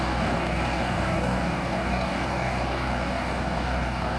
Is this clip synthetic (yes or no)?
yes